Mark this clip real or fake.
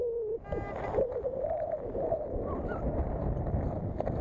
real